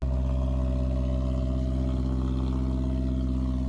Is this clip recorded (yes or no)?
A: yes